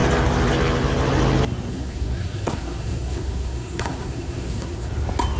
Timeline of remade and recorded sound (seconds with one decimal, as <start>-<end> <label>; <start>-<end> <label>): 0.0-1.7 recorded; 1.7-4.9 remade; 4.9-5.4 recorded